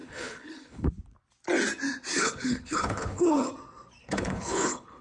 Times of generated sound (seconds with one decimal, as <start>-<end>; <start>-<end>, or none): 0.0-0.9; 2.1-3.5; 4.0-5.0